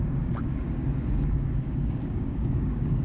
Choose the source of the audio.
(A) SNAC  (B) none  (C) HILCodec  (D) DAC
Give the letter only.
D